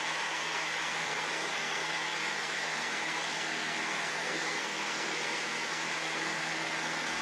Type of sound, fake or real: fake